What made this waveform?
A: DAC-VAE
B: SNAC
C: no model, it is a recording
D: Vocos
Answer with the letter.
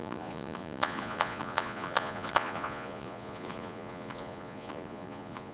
D